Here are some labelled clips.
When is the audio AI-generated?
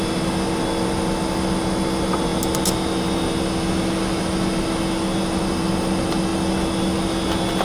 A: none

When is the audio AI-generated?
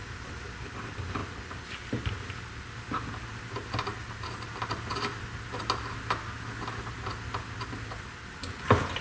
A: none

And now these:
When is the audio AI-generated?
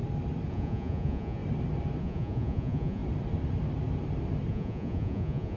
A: 0.5-1.4 (vocoder, Vocos); 2.0-3.0; 4.5-5.6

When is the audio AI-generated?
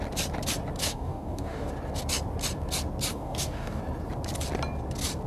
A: 0.8-1.7 (codec, DAC); 3.1-3.8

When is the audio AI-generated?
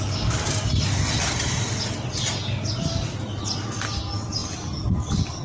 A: none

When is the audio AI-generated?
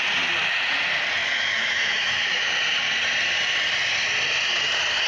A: 1.2-2.5 (autoencoder, DAC-VAE)